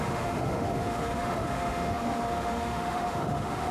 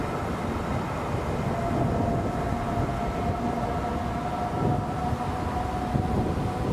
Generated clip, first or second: first